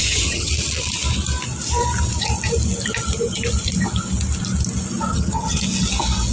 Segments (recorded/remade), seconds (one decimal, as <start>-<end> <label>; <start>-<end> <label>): 0.0-0.5 remade; 0.5-5.1 recorded; 5.1-5.6 remade; 5.6-6.3 recorded